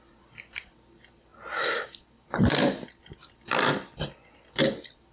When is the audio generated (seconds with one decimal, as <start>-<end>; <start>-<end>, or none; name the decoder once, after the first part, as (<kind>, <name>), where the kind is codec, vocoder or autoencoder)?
none